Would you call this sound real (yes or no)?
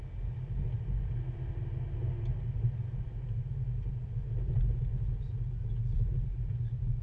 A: yes